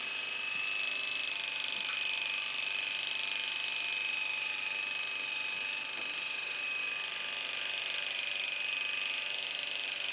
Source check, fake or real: real